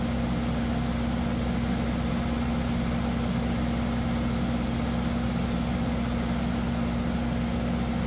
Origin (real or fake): real